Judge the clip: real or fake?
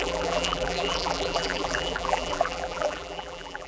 fake